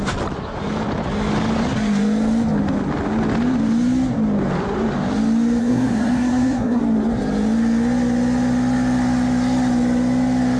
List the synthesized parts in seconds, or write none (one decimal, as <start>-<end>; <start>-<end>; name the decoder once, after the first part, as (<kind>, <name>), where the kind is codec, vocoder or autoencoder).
5.6-6.8 (codec, SNAC)